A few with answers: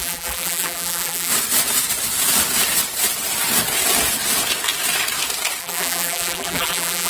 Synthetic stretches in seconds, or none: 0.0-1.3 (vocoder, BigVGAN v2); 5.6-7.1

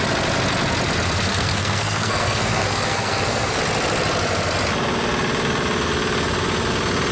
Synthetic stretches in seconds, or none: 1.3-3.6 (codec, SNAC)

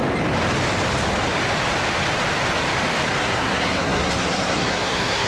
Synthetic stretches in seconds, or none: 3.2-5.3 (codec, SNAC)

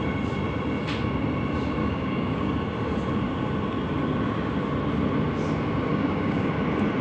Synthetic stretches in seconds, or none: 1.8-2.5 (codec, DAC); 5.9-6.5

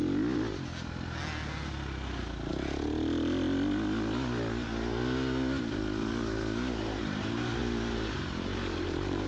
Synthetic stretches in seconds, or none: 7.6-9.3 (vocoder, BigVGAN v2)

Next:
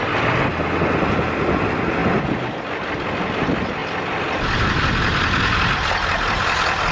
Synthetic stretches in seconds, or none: none

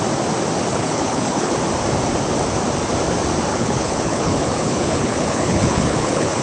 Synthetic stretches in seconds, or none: 0.7-1.5 (codec, HILCodec); 3.5-6.4